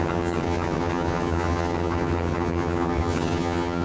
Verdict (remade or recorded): remade